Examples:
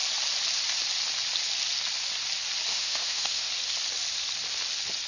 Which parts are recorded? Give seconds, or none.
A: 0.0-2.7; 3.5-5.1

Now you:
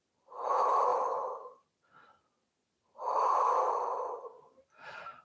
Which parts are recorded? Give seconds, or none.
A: 0.0-5.2